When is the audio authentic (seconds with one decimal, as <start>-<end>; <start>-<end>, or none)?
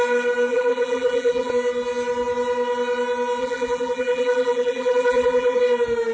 0.0-0.5; 1.5-3.4; 5.6-6.1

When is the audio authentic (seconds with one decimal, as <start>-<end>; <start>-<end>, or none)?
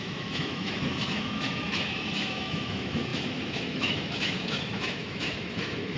none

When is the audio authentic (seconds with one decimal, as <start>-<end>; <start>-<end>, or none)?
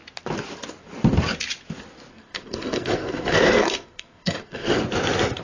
0.0-2.1; 4.8-5.4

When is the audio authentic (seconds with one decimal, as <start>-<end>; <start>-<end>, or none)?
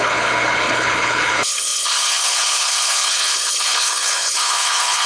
none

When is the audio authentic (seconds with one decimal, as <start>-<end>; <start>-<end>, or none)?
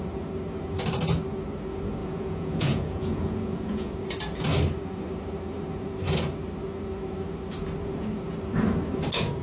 0.0-2.0; 3.9-9.4